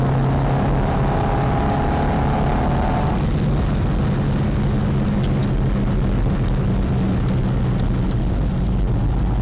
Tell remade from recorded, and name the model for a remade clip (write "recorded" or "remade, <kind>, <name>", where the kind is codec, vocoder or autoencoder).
recorded